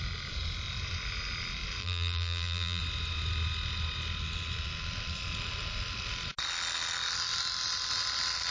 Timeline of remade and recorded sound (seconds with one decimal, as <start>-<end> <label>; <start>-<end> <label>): 0.0-1.8 recorded; 1.8-2.8 remade; 2.8-8.5 recorded